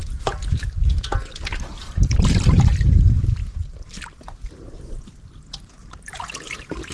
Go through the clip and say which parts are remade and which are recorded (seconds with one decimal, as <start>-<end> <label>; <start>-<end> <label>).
0.0-3.4 remade; 3.4-5.3 recorded; 5.3-6.9 remade

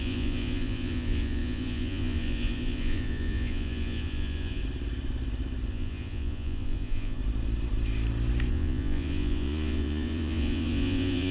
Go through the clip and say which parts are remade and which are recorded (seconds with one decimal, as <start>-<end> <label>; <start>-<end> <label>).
0.0-4.6 remade; 4.6-5.7 recorded; 5.7-7.2 remade; 7.2-8.5 recorded; 8.5-11.3 remade